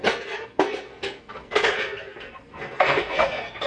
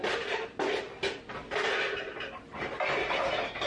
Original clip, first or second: second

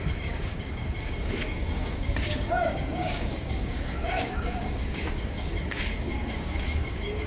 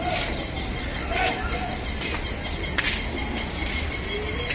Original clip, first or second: second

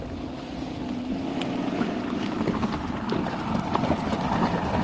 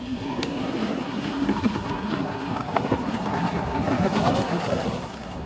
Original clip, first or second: first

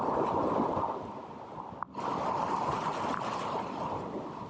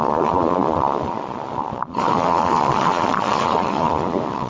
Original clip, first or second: first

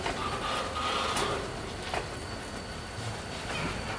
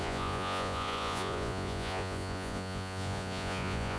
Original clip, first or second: first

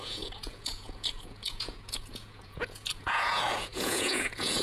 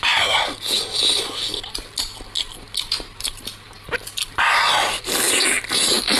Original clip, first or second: second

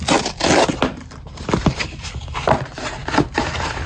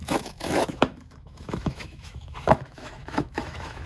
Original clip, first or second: first